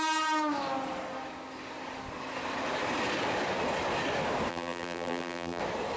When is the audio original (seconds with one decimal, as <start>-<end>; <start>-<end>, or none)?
0.0-4.5; 5.6-6.0